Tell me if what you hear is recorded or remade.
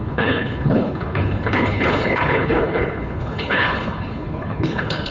remade